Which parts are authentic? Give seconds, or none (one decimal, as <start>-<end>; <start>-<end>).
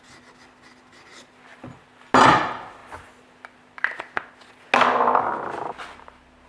0.0-6.5